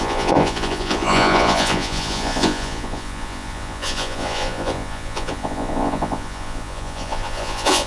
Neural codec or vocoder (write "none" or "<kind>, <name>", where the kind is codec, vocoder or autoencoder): vocoder, Vocos